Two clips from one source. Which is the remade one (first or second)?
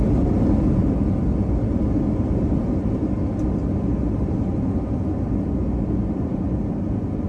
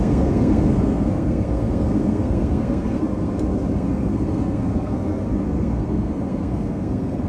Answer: second